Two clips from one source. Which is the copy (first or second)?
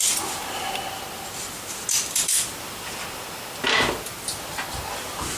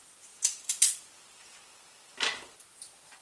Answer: second